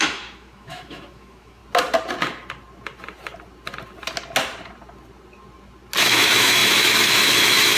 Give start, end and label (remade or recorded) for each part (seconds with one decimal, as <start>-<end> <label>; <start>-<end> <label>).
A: 0.0-1.6 remade; 1.6-6.0 recorded; 6.0-7.8 remade

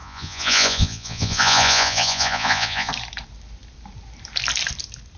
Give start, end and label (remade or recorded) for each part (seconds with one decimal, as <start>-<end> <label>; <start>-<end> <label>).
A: 0.0-2.9 remade; 2.9-5.2 recorded

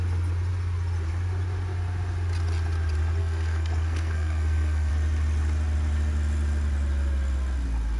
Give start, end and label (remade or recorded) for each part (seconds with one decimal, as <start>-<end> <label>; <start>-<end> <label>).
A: 0.0-3.2 recorded; 3.2-4.9 remade; 4.9-8.0 recorded

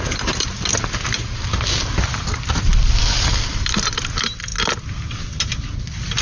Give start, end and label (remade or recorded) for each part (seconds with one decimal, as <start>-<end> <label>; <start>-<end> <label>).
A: 0.0-6.2 recorded

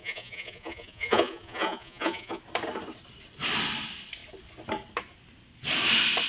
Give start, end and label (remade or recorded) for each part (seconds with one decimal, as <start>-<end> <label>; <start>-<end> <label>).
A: 0.0-2.4 remade; 2.4-6.3 recorded

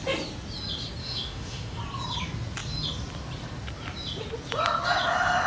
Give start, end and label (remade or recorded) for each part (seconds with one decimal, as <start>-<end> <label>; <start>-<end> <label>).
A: 0.0-1.0 recorded; 1.0-1.8 remade; 1.8-5.5 recorded

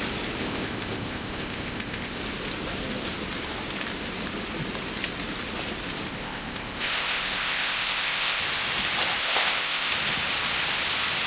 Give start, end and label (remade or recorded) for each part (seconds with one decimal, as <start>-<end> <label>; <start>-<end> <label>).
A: 0.0-0.4 recorded; 0.4-2.2 remade; 2.2-6.1 recorded; 6.1-8.4 remade; 8.4-9.2 recorded; 9.2-9.9 remade; 9.9-11.3 recorded